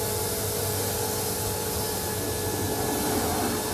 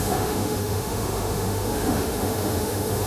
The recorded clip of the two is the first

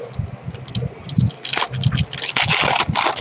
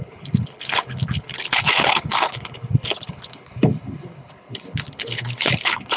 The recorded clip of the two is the first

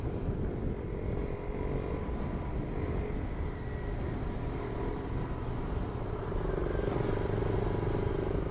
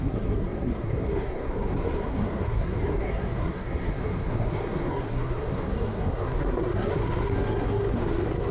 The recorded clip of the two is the first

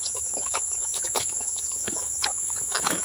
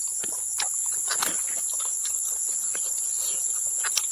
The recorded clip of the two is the second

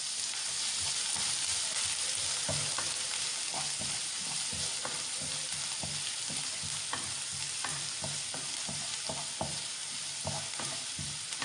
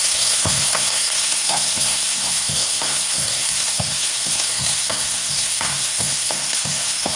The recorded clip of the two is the first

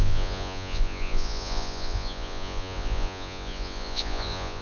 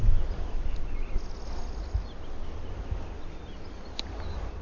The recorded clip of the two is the second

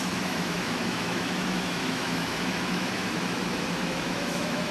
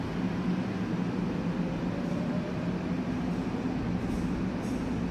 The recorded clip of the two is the second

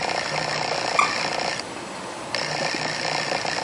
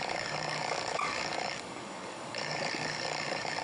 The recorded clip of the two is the first